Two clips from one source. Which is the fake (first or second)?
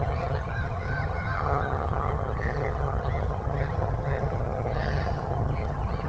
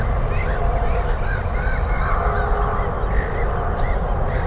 first